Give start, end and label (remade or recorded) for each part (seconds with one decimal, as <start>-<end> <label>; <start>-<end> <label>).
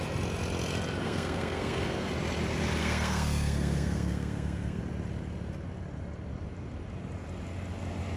0.0-1.0 recorded; 1.0-2.1 remade; 2.1-2.8 recorded; 2.8-4.8 remade; 4.8-8.2 recorded